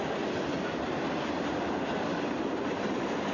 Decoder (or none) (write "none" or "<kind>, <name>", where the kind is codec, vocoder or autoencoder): none